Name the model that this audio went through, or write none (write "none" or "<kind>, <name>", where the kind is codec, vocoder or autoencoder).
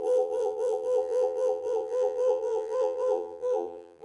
vocoder, BigVGAN v2